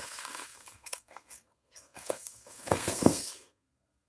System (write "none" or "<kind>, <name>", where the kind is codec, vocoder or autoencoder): codec, SNAC